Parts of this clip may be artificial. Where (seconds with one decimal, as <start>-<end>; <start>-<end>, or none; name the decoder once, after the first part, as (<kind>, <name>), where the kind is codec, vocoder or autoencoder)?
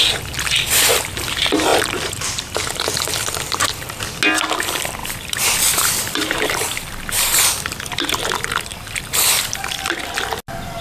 1.7-3.3 (vocoder, BigVGAN v2); 5.0-9.6